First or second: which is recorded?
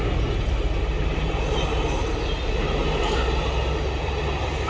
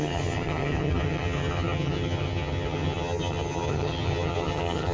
first